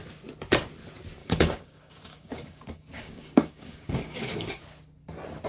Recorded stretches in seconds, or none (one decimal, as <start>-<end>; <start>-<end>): 0.0-1.2; 4.5-5.5